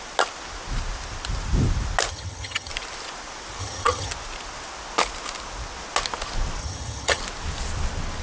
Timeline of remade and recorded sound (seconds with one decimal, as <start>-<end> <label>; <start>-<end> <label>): 0.0-2.1 recorded; 2.1-2.7 remade; 2.7-3.6 recorded; 3.6-4.1 remade; 4.1-6.6 recorded; 6.6-7.2 remade; 7.2-8.2 recorded